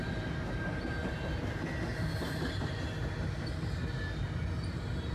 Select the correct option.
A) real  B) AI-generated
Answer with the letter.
A